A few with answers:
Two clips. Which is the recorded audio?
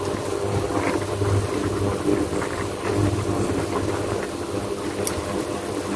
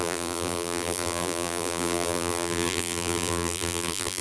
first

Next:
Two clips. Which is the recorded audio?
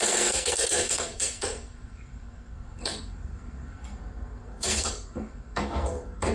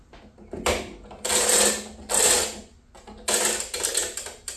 second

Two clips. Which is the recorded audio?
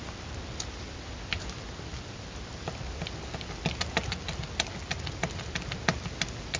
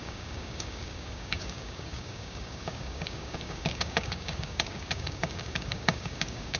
first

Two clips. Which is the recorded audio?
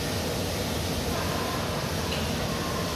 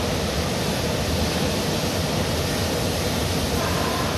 first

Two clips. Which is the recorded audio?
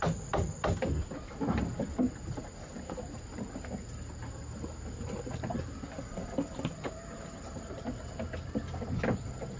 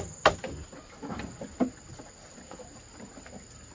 second